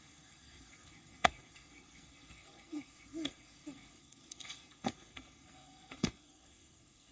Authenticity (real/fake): fake